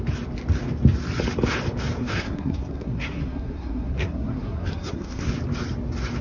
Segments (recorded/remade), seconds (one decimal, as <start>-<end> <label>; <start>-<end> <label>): 0.0-2.0 recorded; 2.0-5.3 remade; 5.3-6.2 recorded